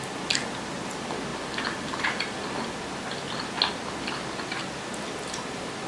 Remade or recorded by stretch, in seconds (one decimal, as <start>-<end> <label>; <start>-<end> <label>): 0.0-5.9 recorded